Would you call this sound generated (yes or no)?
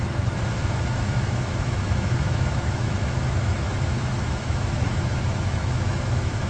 yes